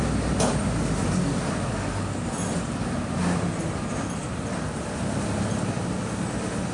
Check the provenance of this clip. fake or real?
real